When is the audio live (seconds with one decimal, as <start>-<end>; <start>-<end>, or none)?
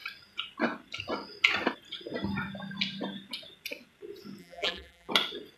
0.0-4.4; 5.1-5.6